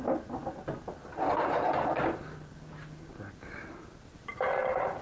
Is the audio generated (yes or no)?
no